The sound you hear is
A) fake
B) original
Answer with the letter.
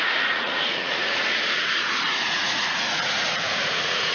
A